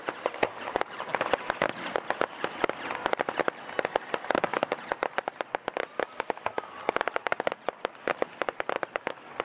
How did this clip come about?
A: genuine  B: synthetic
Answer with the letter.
A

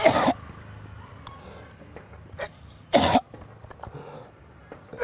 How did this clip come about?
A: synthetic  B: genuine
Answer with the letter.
B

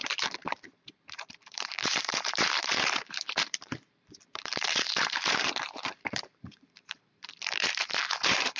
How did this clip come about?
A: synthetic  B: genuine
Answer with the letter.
A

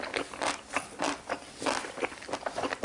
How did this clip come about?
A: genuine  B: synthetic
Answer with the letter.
A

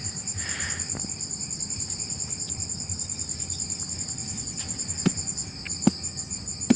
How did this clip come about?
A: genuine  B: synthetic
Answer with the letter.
A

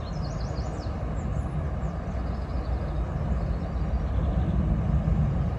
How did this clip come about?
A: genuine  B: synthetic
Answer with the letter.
A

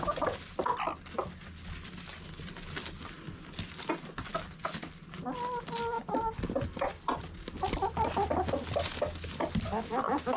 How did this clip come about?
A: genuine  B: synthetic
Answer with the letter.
A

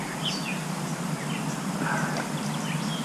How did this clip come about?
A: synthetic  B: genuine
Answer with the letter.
B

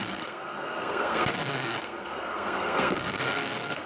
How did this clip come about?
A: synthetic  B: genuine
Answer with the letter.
A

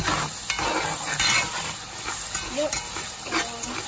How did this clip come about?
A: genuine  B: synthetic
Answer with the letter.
A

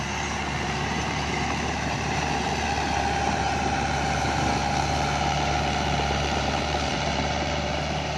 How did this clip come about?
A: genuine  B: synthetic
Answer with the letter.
B